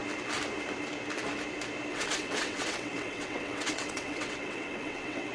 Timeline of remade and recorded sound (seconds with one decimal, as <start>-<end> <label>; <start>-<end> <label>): 0.0-1.9 recorded; 1.9-5.3 remade